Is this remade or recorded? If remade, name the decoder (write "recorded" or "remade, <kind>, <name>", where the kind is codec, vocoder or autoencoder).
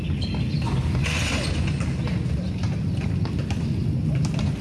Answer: recorded